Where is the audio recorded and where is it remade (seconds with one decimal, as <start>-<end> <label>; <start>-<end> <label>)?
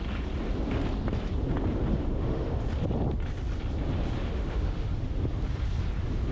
0.0-2.0 recorded; 2.0-2.6 remade; 2.6-4.2 recorded; 4.2-4.9 remade; 4.9-6.3 recorded